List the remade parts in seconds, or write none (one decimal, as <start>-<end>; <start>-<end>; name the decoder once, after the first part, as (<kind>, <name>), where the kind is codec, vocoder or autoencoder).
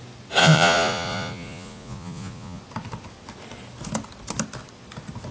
0.4-2.6 (vocoder, Vocos)